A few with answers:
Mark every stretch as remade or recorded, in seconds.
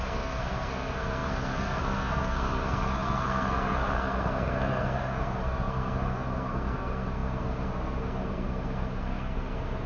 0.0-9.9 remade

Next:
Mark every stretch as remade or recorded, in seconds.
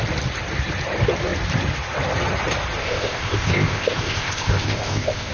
0.0-2.8 recorded; 2.8-5.3 remade